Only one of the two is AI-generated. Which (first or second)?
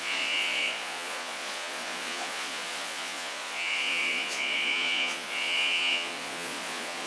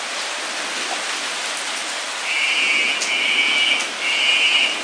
first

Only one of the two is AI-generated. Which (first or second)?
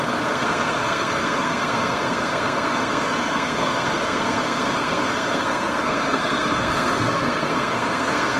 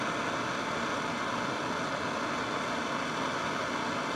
first